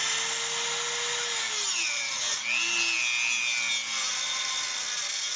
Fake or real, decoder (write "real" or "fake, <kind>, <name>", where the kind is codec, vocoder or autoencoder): real